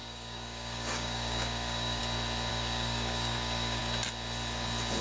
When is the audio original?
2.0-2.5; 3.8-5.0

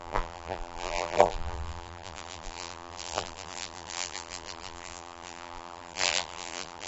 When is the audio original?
none

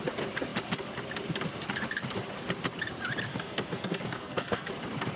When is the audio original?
0.0-3.3; 4.7-5.2

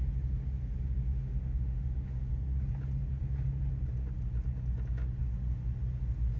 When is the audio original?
0.0-1.1; 2.3-6.4

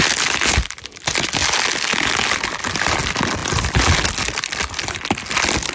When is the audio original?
0.0-5.7

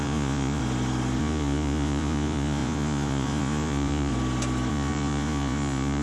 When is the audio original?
0.6-1.2; 4.1-4.7

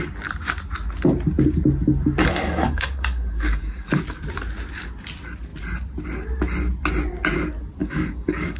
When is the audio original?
0.0-2.2; 4.0-7.8